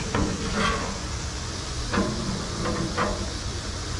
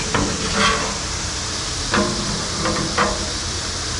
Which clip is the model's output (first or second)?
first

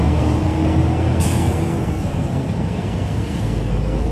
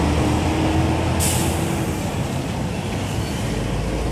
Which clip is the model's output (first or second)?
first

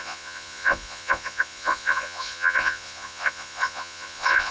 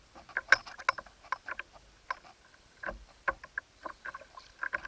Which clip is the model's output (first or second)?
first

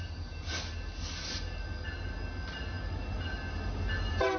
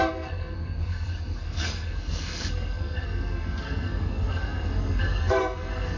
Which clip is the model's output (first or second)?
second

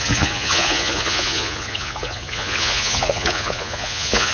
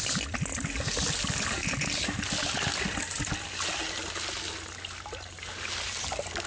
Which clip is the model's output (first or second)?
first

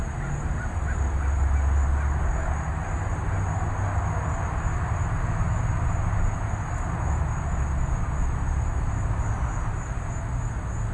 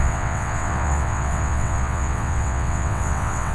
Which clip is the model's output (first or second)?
second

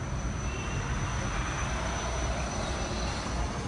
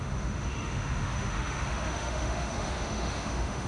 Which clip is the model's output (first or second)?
second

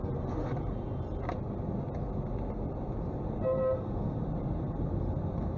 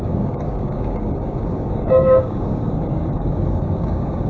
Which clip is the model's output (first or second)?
second